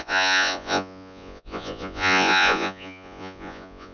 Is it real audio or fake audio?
fake